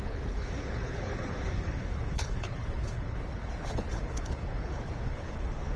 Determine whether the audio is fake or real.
fake